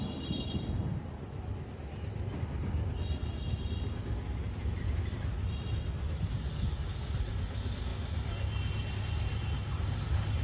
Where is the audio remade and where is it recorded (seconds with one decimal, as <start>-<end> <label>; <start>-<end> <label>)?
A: 0.0-10.4 recorded